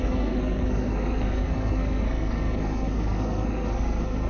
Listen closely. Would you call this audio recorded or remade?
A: remade